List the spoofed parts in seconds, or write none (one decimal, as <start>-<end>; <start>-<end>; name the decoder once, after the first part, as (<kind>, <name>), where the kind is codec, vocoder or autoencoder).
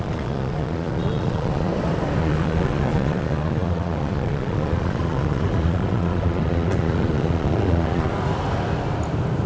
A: 0.0-1.7 (vocoder, Vocos); 2.2-8.1